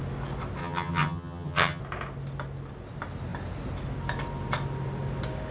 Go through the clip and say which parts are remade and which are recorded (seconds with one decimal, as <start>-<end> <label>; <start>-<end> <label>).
0.0-0.6 recorded; 0.6-1.8 remade; 1.8-5.5 recorded